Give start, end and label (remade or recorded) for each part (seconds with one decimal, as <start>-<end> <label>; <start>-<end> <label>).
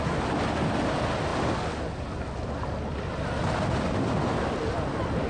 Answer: 0.0-5.3 recorded